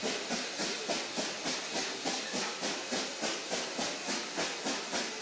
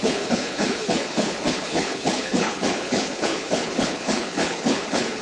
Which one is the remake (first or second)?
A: second